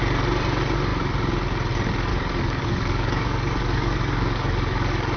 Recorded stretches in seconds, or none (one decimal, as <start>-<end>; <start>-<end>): 0.0-2.1